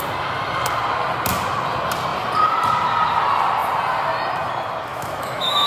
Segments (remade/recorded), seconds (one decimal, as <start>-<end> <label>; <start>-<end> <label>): 0.0-4.9 recorded; 4.9-5.7 remade